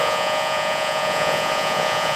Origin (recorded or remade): remade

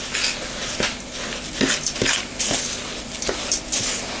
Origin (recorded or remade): recorded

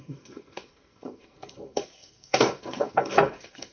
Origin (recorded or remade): remade